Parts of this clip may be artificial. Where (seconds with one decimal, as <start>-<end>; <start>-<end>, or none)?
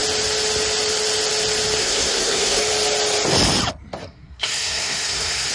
1.8-2.6; 4.0-5.5